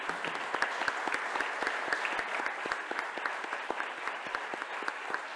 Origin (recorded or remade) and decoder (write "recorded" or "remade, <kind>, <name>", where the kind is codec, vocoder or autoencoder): recorded